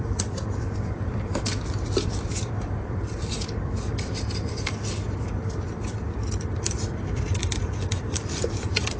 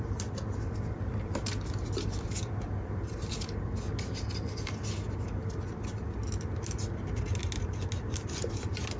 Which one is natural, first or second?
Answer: second